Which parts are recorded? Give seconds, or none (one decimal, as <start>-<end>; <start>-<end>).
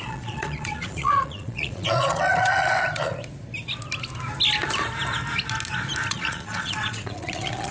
3.2-6.1